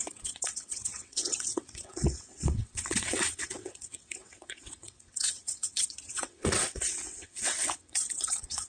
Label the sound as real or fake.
fake